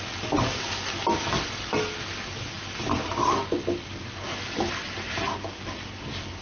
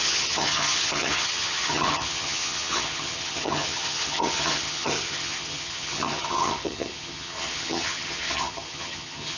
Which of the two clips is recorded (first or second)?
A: first